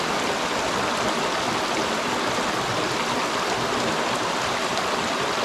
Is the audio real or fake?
real